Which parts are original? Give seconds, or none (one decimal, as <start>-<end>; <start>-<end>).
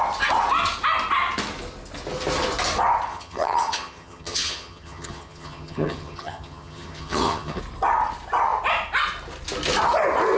0.0-3.1; 7.6-10.4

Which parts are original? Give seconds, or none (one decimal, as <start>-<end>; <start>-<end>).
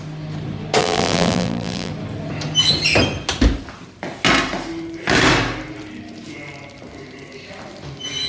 0.0-0.8; 1.9-8.3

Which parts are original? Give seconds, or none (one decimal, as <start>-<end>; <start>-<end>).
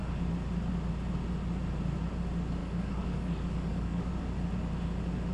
0.0-2.6; 4.1-5.3